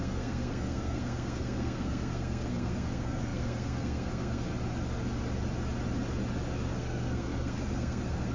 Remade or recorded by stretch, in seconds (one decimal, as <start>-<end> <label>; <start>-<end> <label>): 0.0-4.5 remade; 4.5-6.8 recorded; 6.8-8.3 remade